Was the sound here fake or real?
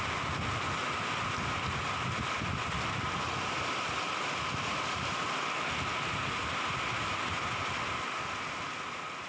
real